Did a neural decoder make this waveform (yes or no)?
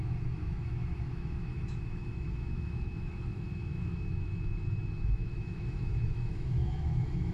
yes